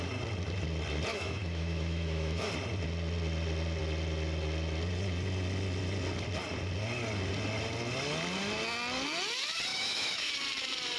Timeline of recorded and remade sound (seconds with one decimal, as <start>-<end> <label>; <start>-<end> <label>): 0.0-1.1 recorded; 1.1-2.5 remade; 2.5-9.7 recorded; 9.7-10.3 remade; 10.3-11.0 recorded